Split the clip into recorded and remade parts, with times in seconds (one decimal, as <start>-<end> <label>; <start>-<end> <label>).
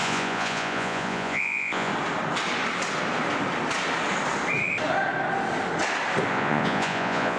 0.0-1.9 remade; 1.9-6.3 recorded; 6.3-7.4 remade